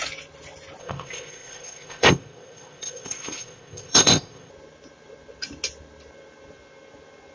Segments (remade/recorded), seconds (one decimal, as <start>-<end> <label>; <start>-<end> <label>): 0.0-0.8 recorded; 0.8-4.5 remade; 4.5-7.3 recorded